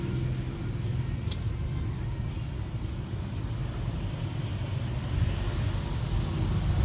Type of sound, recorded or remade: recorded